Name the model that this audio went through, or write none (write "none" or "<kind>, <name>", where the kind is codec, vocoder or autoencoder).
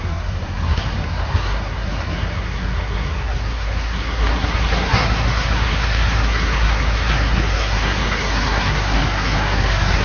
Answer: codec, SNAC